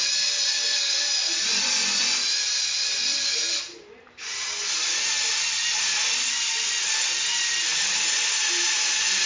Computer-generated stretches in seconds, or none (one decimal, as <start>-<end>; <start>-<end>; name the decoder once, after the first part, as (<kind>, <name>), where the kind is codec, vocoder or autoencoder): none